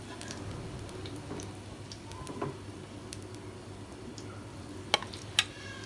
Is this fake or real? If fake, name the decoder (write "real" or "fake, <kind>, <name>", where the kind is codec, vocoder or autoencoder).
real